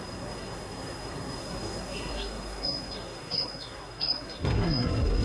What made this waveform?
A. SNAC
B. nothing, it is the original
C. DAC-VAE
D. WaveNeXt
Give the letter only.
A